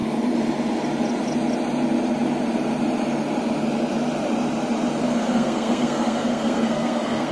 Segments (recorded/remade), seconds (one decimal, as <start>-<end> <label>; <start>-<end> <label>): 0.0-5.0 recorded; 5.0-7.3 remade